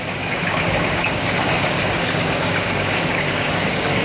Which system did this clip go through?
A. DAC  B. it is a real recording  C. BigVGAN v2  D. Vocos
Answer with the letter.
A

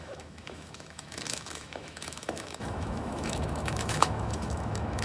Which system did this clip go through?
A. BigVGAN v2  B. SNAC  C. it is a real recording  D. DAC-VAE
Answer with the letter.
D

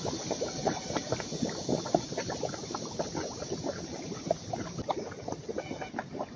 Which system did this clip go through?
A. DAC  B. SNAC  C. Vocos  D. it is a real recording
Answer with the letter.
D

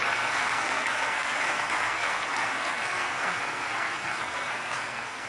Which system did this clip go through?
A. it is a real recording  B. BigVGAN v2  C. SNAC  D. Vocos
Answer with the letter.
C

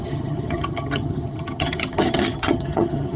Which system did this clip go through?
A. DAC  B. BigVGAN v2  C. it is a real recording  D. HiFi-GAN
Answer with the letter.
D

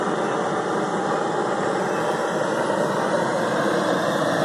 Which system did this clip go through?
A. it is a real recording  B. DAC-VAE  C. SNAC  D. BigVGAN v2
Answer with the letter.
A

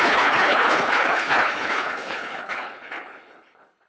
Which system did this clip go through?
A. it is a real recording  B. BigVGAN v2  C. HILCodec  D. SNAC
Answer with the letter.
C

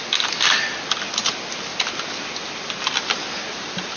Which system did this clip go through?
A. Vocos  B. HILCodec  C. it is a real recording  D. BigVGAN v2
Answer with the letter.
C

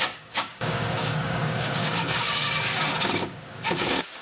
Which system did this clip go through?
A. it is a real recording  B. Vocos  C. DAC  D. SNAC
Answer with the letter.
C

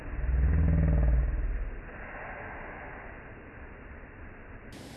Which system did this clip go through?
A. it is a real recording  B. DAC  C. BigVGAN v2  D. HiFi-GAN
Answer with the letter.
A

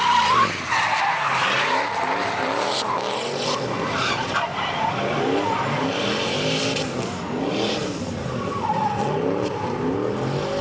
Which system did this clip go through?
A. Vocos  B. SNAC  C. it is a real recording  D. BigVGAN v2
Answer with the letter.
C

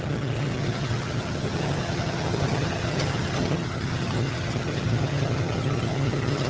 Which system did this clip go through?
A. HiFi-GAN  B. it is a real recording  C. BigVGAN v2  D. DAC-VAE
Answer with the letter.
A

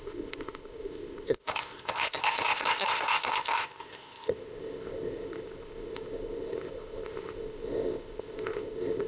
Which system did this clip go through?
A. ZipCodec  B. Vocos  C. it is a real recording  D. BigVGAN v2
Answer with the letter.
A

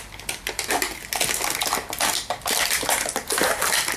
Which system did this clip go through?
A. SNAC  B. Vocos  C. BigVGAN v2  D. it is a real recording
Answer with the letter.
D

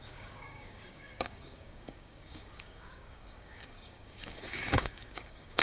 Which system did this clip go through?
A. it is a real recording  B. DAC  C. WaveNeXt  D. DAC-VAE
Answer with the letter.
B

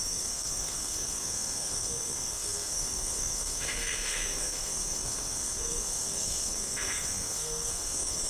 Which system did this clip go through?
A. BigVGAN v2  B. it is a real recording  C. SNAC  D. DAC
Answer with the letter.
C